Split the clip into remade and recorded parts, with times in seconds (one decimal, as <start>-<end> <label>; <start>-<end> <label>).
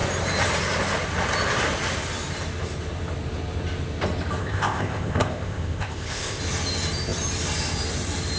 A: 0.0-4.4 recorded; 4.4-6.4 remade; 6.4-8.4 recorded